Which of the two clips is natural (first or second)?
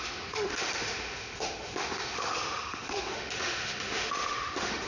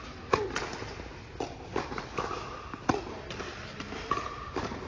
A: second